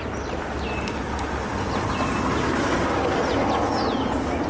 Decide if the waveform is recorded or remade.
recorded